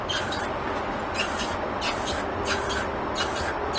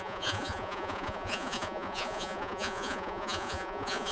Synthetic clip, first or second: second